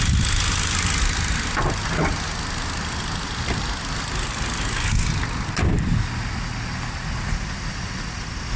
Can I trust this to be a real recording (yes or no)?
yes